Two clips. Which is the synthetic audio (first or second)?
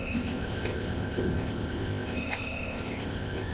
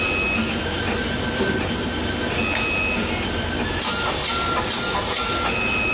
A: first